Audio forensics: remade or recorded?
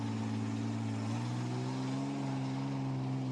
recorded